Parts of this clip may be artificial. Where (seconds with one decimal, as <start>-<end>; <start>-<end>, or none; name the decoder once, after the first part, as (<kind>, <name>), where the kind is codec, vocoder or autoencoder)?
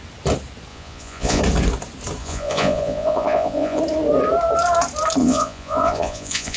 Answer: 0.7-1.4 (vocoder, Vocos); 2.2-3.8; 5.2-6.6